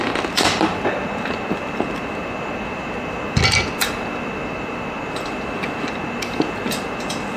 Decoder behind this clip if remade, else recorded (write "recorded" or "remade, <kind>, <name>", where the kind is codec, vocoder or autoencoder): remade, vocoder, BigVGAN v2